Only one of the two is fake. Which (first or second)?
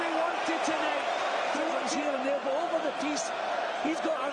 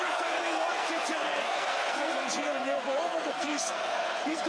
second